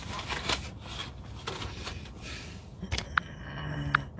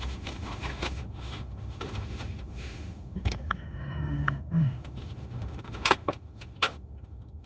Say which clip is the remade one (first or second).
second